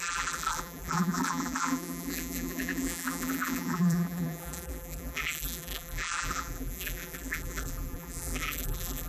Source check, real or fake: fake